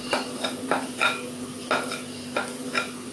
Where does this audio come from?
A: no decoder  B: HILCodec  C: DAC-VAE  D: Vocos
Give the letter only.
A